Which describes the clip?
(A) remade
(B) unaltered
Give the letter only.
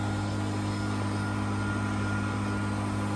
B